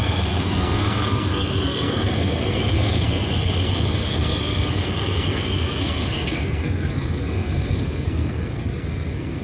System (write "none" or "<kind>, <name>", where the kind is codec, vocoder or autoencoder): codec, SNAC